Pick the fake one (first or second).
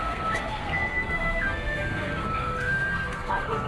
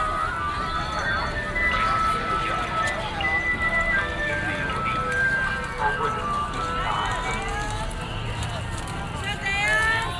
first